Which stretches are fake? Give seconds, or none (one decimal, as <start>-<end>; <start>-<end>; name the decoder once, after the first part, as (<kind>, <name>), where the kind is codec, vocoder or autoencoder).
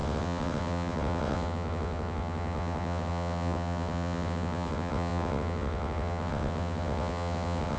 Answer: 0.0-7.8 (vocoder, WaveNeXt)